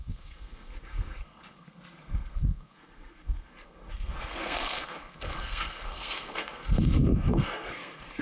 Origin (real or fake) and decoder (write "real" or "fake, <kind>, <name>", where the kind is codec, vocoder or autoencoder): fake, codec, SNAC